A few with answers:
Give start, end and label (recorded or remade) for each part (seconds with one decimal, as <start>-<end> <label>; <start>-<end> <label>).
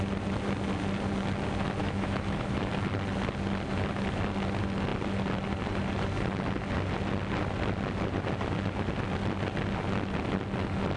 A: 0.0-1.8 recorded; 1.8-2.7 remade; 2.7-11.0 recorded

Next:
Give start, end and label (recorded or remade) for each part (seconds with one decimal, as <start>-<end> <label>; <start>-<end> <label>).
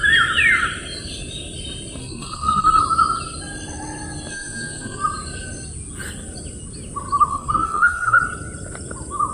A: 0.0-2.0 recorded; 2.0-2.8 remade; 2.8-4.3 recorded; 4.3-5.0 remade; 5.0-7.3 recorded; 7.3-8.2 remade; 8.2-9.3 recorded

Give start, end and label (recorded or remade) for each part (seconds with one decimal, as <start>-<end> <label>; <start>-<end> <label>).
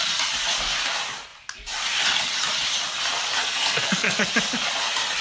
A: 0.0-3.4 recorded; 3.4-4.3 remade; 4.3-5.2 recorded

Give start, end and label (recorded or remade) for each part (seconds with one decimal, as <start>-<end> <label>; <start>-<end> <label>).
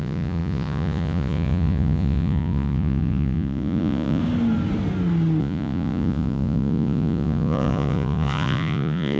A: 0.0-4.2 remade; 4.2-5.4 recorded; 5.4-9.2 remade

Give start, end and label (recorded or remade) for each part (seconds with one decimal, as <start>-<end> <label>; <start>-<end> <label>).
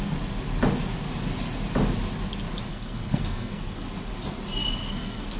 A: 0.0-2.7 recorded; 2.7-3.9 remade; 3.9-4.8 recorded; 4.8-5.4 remade